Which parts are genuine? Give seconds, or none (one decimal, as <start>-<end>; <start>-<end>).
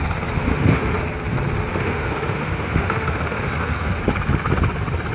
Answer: 0.0-0.5; 1.0-1.7; 4.0-5.1